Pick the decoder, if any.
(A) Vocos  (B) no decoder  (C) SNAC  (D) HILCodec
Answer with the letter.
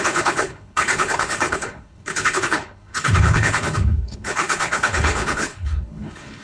D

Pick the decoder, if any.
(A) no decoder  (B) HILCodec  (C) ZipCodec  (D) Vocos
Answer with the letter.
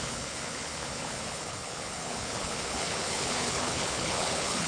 B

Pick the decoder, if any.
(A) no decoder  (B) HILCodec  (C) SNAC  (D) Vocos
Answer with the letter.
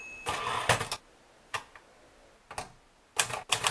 A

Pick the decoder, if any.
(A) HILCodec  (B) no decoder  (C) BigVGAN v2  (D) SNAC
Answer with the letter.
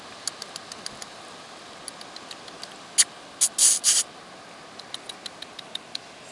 B